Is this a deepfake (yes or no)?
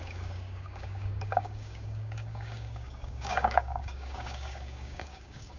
yes